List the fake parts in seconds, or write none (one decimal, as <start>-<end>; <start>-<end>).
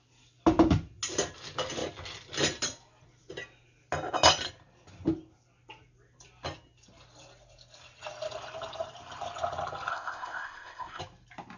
9.9-11.0